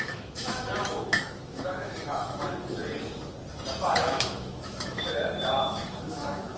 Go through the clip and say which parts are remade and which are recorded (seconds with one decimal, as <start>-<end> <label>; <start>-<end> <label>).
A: 0.0-2.8 remade; 2.8-3.9 recorded; 3.9-6.6 remade